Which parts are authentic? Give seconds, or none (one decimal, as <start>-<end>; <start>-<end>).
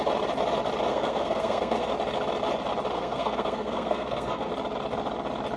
0.0-0.9; 1.9-2.9; 4.5-5.6